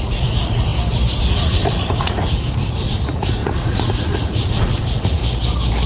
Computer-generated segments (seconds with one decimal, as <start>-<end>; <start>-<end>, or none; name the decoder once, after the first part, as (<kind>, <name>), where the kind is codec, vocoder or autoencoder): 0.0-0.7 (vocoder, Vocos); 1.3-5.2